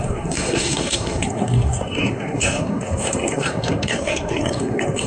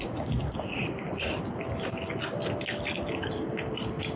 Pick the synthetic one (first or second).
first